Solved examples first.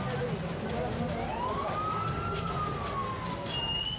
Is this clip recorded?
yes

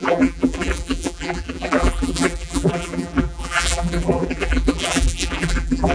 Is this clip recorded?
no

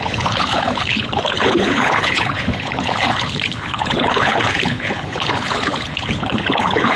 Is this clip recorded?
no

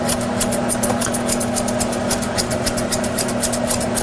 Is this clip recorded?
yes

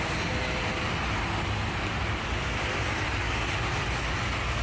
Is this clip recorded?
yes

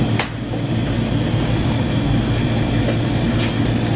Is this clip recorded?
yes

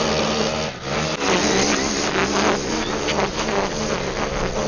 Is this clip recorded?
yes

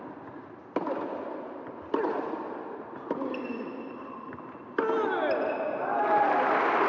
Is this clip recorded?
yes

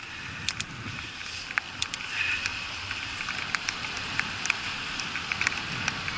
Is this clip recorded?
yes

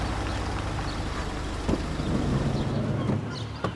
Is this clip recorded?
yes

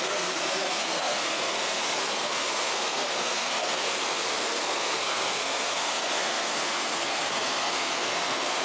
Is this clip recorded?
no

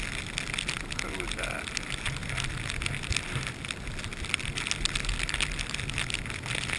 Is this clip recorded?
yes